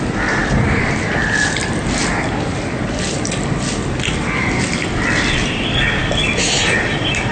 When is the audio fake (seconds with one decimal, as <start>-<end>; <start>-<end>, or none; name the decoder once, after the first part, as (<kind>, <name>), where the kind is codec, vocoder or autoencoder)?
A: 0.0-2.0 (vocoder, BigVGAN v2); 3.4-7.3